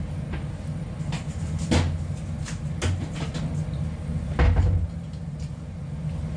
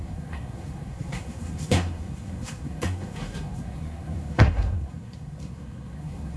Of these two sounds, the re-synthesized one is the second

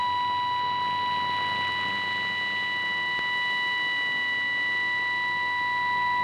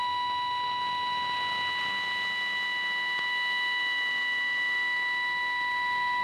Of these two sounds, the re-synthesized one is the second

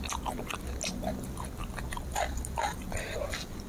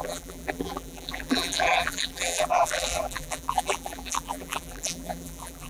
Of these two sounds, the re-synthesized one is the second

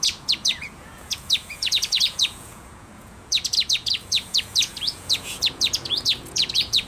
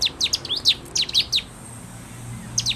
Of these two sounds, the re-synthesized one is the first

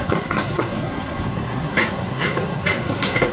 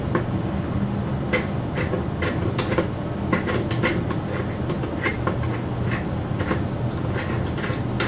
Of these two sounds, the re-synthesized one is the first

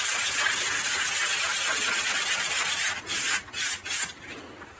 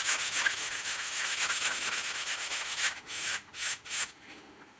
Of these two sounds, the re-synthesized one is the second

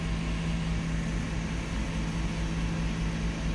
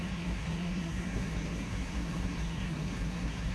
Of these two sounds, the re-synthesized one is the second